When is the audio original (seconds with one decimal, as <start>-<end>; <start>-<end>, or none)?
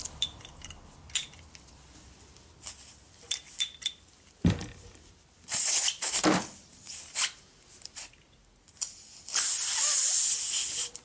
0.0-11.0